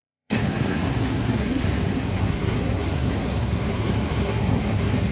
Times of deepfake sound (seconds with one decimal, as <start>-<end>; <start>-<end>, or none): 0.0-5.1